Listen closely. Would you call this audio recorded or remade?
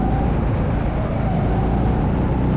recorded